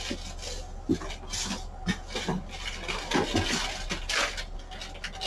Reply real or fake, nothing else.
real